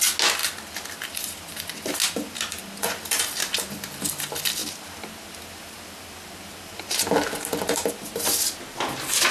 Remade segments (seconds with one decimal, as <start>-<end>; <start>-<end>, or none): none